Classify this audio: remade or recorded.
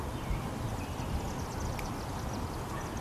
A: remade